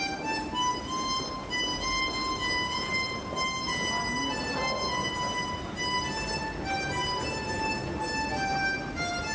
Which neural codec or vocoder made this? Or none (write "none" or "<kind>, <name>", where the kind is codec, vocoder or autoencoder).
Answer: none